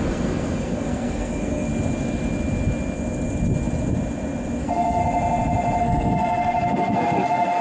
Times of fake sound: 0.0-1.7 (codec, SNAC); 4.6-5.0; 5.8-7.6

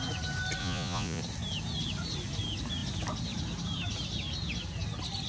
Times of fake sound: 0.6-1.2 (vocoder, Vocos)

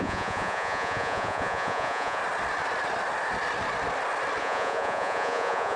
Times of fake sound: 0.0-2.2 (vocoder, Vocos); 4.4-5.8

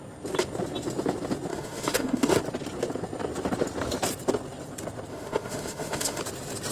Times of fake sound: 1.5-2.4 (autoencoder, DAC-VAE); 5.1-6.2

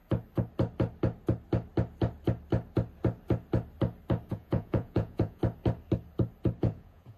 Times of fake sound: 4.3-5.4 (vocoder, Vocos); 6.6-7.2

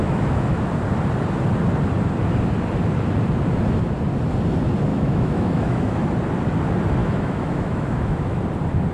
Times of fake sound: 0.0-0.7 (autoencoder, DAC-VAE); 4.9-6.0; 7.0-8.4